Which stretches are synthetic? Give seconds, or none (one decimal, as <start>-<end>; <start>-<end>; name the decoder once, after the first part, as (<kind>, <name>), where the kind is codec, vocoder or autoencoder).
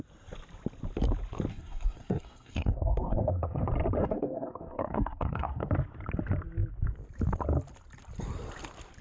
1.5-3.6 (codec, SNAC); 4.0-5.7